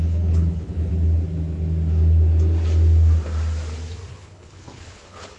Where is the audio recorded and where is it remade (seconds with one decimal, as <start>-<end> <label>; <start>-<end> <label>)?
0.0-0.9 remade; 0.9-4.1 recorded; 4.1-5.4 remade